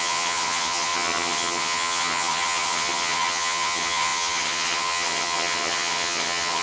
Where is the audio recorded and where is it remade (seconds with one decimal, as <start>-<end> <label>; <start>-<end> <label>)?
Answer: 0.0-6.6 remade